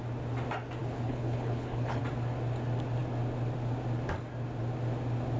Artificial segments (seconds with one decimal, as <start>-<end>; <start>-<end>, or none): 0.8-2.0